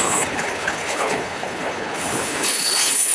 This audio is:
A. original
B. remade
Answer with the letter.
B